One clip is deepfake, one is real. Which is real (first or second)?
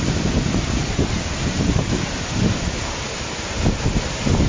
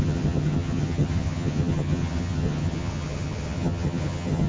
first